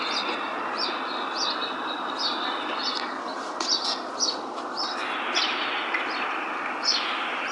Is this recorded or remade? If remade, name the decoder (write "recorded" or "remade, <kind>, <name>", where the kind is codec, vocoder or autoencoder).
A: recorded